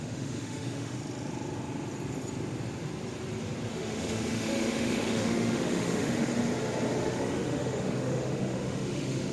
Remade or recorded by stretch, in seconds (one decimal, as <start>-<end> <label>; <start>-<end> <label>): 0.0-1.0 remade; 1.0-3.7 recorded; 3.7-6.3 remade; 6.3-7.0 recorded; 7.0-9.3 remade